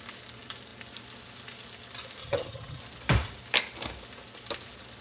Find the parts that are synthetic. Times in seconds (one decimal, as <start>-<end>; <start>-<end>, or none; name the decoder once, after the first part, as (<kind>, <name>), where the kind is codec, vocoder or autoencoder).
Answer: 2.2-2.8 (vocoder, HiFi-GAN)

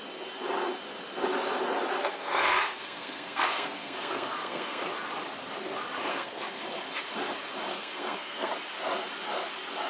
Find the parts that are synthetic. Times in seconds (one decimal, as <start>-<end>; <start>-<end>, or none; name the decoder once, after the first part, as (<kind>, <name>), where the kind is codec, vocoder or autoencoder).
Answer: 2.0-4.8 (codec, SNAC); 6.1-6.6; 7.7-8.5

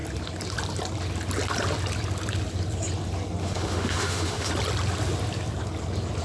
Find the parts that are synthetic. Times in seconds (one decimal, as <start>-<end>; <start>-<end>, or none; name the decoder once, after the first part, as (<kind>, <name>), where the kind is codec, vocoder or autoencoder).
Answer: 3.4-4.5 (autoencoder, DAC-VAE)

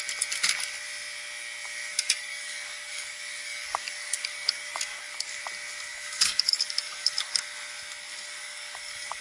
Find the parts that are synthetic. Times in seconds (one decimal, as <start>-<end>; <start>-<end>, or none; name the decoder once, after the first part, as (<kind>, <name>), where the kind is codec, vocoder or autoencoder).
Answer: 1.9-5.4 (codec, DAC); 5.9-7.3; 8.1-9.2

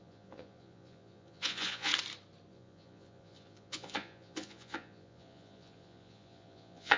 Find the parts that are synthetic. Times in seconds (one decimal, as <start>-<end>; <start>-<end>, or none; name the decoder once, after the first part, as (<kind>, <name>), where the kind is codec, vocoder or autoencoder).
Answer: 0.0-1.9 (vocoder, Vocos); 2.5-7.0

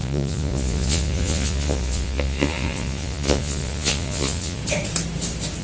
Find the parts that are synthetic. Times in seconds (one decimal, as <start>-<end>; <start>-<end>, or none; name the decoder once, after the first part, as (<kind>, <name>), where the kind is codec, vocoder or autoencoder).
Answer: 0.0-4.6 (vocoder, Vocos)